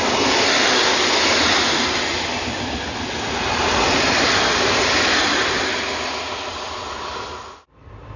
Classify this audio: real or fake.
real